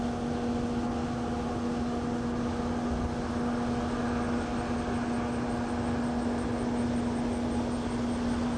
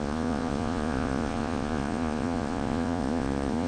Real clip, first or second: first